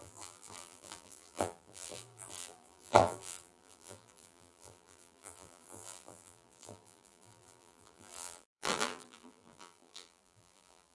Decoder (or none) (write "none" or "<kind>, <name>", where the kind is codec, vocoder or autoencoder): vocoder, BigVGAN v2